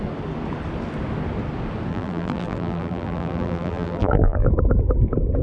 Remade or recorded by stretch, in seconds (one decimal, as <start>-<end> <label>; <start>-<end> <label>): 0.0-1.9 recorded; 1.9-4.5 remade; 4.5-5.4 recorded